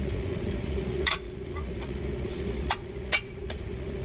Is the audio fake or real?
fake